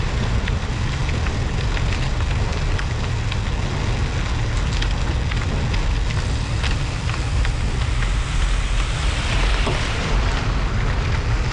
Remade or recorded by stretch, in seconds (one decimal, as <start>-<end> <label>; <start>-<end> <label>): 0.0-1.0 remade; 1.0-2.1 recorded; 2.1-2.5 remade; 2.5-6.5 recorded; 6.5-11.5 remade